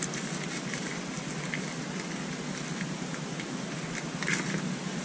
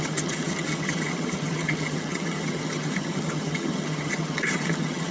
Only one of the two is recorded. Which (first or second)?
first